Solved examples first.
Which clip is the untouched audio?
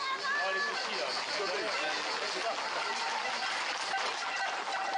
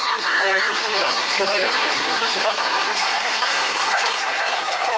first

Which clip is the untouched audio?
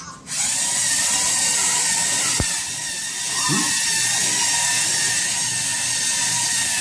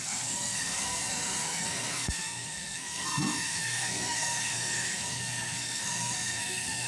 first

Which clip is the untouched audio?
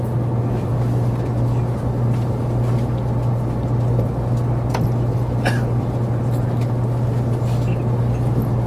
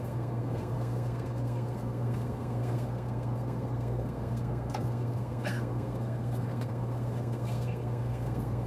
first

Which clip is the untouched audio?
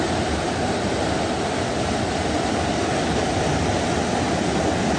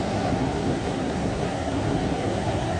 first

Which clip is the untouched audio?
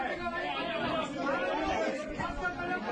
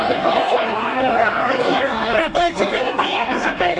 first